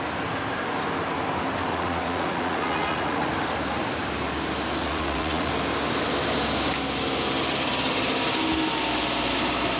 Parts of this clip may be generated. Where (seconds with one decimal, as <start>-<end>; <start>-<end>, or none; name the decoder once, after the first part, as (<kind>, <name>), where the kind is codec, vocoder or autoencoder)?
1.7-3.3 (vocoder, Vocos); 4.8-5.5